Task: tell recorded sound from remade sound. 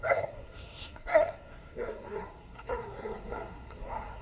remade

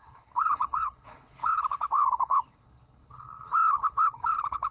remade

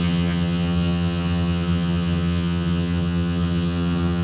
remade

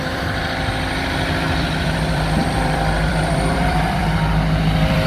remade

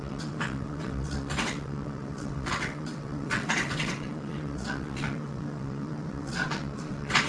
remade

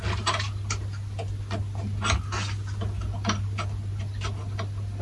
recorded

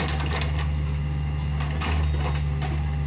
recorded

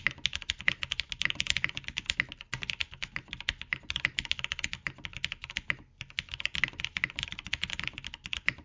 recorded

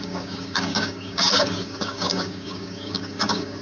remade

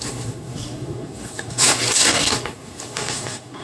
remade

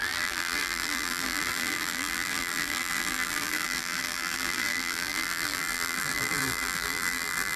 remade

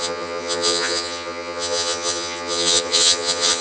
remade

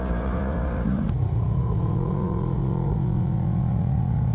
remade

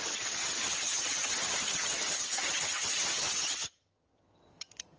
remade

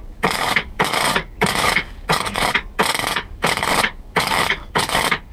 remade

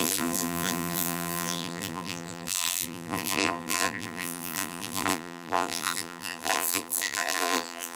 remade